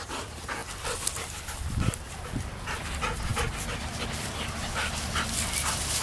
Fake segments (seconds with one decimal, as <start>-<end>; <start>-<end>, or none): none